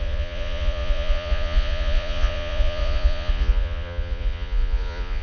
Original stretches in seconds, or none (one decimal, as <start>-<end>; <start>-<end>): none